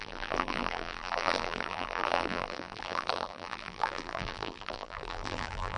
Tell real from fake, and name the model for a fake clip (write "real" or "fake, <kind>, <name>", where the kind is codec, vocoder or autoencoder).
fake, vocoder, BigVGAN v2